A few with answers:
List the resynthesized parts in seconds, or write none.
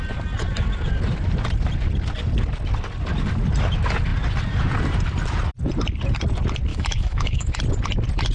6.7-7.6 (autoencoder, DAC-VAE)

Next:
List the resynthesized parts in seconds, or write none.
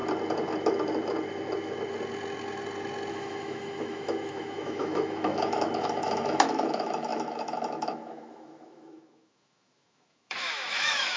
3.1-11.2 (autoencoder, DAC-VAE)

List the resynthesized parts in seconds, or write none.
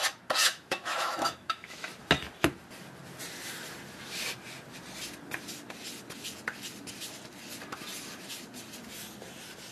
0.4-1.9 (autoencoder, DAC-VAE)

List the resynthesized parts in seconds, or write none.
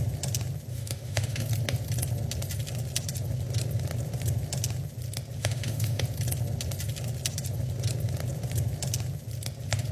0.7-1.5 (autoencoder, DAC-VAE); 5.4-6.0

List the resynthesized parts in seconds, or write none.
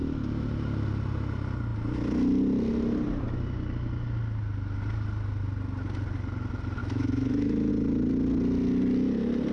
6.8-7.7 (autoencoder, DAC-VAE)